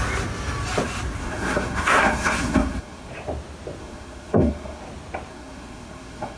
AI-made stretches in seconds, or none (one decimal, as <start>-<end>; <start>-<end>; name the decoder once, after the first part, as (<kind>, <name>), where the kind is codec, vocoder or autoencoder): 1.2-3.1 (codec, SNAC); 3.8-4.8; 5.3-6.4